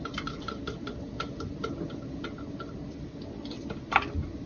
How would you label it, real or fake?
real